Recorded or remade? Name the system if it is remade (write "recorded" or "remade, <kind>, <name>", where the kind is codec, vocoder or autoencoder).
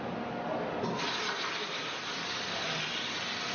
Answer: recorded